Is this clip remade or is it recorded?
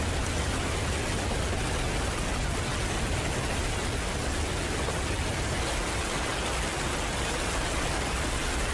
recorded